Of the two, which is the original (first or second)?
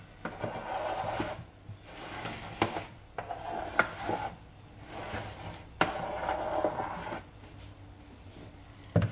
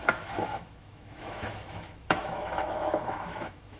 first